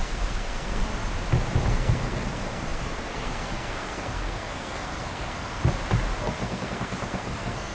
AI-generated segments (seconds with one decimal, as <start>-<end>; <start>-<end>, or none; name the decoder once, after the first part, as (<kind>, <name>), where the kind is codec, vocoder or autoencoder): 0.0-0.8 (codec, SNAC); 1.7-5.6; 6.2-7.7